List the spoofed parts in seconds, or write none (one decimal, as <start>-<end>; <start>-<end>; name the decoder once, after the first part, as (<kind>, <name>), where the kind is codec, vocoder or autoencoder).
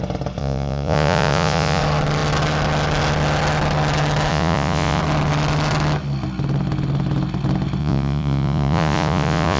0.4-1.8 (vocoder, Vocos); 4.3-5.0; 7.8-9.6